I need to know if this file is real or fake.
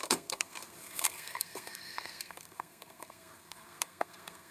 fake